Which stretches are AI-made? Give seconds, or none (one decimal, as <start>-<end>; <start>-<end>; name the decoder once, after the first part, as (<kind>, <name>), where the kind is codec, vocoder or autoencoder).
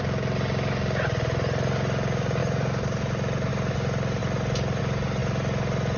2.4-3.5 (vocoder, BigVGAN v2)